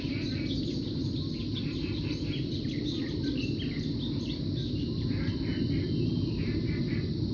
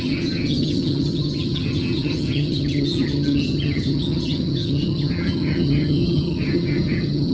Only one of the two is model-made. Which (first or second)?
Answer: second